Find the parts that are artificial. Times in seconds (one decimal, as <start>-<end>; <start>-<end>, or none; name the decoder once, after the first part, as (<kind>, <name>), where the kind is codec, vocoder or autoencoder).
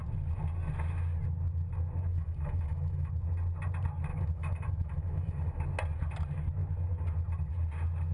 2.1-3.1 (autoencoder, DAC-VAE); 4.1-5.6